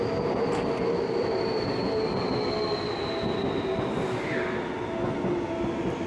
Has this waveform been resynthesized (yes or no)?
no